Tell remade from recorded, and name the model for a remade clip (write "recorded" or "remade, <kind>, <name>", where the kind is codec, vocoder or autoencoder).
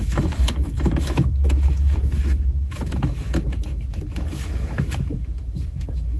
remade, autoencoder, DAC-VAE